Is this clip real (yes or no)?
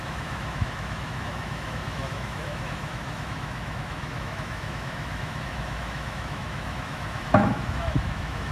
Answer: no